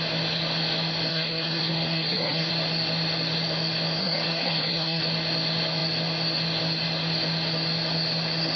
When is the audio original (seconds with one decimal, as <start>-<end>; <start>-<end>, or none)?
0.0-1.1; 2.5-4.0; 5.0-8.6